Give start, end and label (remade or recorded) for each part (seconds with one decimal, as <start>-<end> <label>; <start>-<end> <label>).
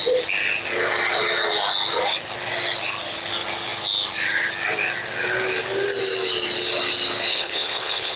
0.0-7.3 recorded; 7.3-8.2 remade